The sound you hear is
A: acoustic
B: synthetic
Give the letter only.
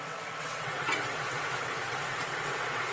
B